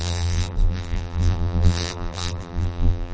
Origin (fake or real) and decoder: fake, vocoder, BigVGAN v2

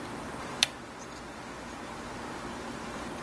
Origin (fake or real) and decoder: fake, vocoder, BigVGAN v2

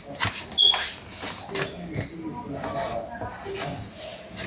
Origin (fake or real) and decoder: real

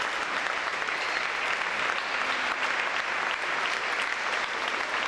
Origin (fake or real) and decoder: real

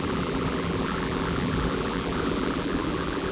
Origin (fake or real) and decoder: fake, vocoder, BigVGAN v2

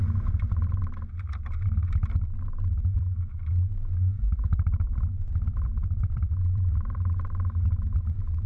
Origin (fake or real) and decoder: fake, vocoder, BigVGAN v2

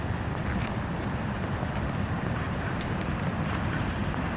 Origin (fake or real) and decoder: fake, vocoder, BigVGAN v2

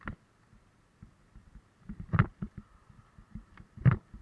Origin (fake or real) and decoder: real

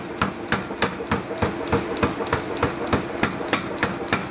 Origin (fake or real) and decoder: real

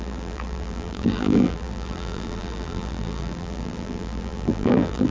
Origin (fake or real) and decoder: fake, vocoder, BigVGAN v2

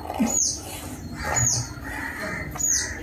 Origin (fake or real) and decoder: real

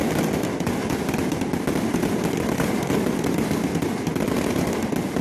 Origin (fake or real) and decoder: real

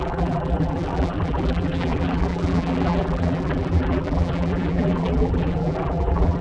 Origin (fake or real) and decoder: fake, vocoder, BigVGAN v2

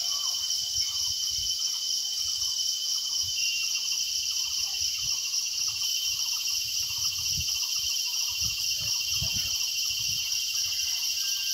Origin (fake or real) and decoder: fake, vocoder, BigVGAN v2